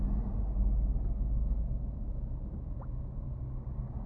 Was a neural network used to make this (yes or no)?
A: no